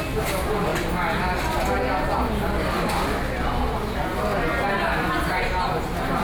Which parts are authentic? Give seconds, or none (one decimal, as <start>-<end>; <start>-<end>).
0.0-6.2